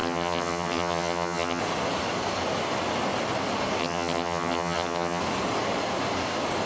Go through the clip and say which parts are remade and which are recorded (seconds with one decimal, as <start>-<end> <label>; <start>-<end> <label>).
0.0-1.6 remade; 1.6-3.8 recorded; 3.8-5.2 remade; 5.2-6.7 recorded